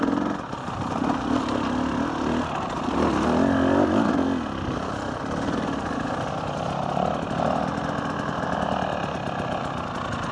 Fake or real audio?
real